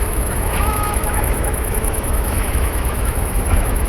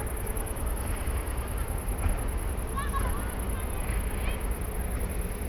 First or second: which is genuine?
second